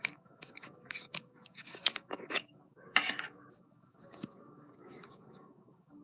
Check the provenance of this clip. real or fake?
fake